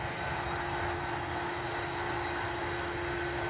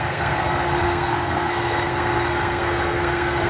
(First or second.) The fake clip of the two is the second